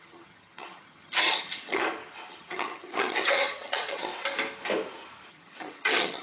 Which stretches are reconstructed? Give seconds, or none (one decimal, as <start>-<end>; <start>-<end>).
0.0-1.8; 2.3-4.1; 5.3-6.2